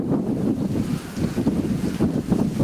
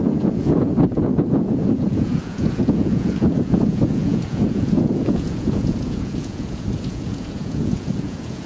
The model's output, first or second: second